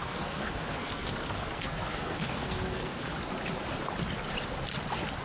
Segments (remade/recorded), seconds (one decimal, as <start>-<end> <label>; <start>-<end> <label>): 0.0-3.1 remade; 3.1-5.2 recorded